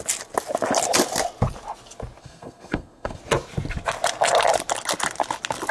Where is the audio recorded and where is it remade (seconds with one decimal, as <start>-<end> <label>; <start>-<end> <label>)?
0.0-2.2 recorded; 2.2-3.2 remade; 3.2-5.7 recorded

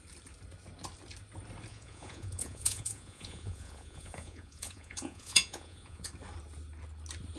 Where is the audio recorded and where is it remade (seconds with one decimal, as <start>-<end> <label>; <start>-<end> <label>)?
0.0-1.7 recorded; 1.7-6.1 remade; 6.1-7.4 recorded

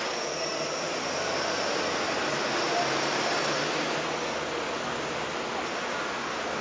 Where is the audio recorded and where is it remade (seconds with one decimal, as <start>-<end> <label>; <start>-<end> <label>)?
0.0-6.6 recorded

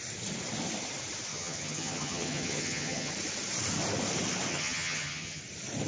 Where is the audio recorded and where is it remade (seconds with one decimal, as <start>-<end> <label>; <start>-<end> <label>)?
0.0-1.3 recorded; 1.3-3.1 remade; 3.1-4.5 recorded; 4.5-5.4 remade; 5.4-5.9 recorded

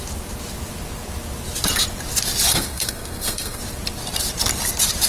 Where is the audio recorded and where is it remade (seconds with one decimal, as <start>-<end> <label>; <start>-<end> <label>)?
0.0-2.5 recorded; 2.5-3.6 remade; 3.6-5.1 recorded

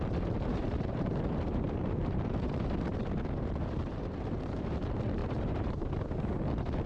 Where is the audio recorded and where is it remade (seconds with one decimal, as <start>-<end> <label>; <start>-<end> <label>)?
0.0-0.5 recorded; 0.5-3.0 remade; 3.0-5.2 recorded; 5.2-5.9 remade; 5.9-6.9 recorded

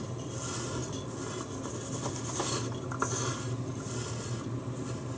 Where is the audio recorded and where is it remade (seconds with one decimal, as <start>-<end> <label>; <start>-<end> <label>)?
0.0-5.2 recorded

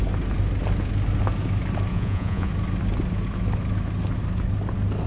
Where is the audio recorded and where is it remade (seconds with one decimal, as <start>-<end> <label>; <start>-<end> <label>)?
0.0-1.9 recorded; 1.9-2.5 remade; 2.5-5.1 recorded